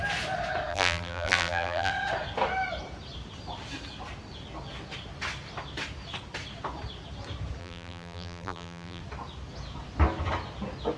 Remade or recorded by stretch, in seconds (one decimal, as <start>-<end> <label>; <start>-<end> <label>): 0.0-0.7 recorded; 0.7-1.9 remade; 1.9-7.6 recorded; 7.6-9.0 remade; 9.0-11.0 recorded